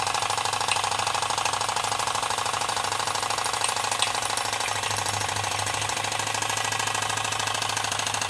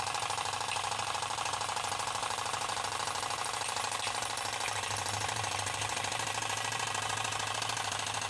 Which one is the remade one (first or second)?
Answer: second